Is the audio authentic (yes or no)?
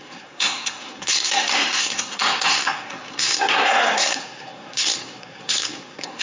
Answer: no